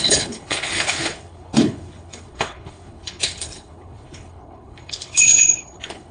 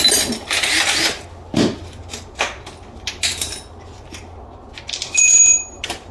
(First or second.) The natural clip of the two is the second